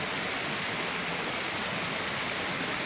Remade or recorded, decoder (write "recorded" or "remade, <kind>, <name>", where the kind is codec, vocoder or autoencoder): recorded